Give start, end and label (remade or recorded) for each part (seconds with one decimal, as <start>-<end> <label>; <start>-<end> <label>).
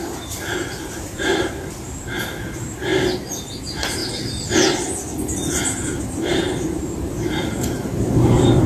0.0-2.9 remade; 2.9-3.6 recorded; 3.6-4.0 remade; 4.0-6.0 recorded; 6.0-8.7 remade